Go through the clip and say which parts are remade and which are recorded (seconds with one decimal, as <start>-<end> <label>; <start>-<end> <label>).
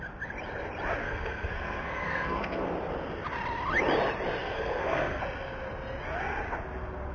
0.0-1.0 recorded; 1.0-2.7 remade; 2.7-4.4 recorded; 4.4-5.2 remade; 5.2-7.1 recorded